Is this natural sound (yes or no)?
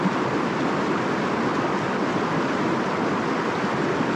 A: yes